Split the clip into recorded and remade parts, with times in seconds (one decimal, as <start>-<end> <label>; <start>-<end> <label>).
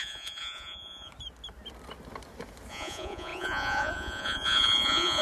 0.0-1.1 remade; 1.1-2.7 recorded; 2.7-5.2 remade